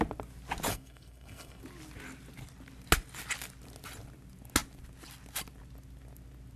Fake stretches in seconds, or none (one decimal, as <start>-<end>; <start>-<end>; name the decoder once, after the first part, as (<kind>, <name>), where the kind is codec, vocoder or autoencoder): 0.7-1.6 (codec, SNAC)